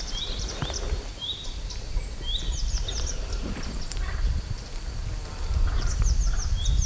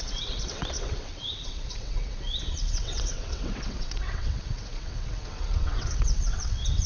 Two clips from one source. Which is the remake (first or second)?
second